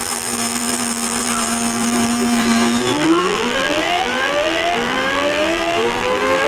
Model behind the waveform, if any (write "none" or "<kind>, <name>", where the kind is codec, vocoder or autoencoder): vocoder, BigVGAN v2